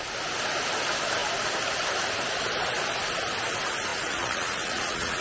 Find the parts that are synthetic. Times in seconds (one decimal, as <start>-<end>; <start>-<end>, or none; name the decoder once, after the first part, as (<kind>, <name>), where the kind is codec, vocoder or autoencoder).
3.9-5.2 (vocoder, Vocos)